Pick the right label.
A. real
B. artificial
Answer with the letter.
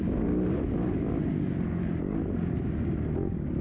A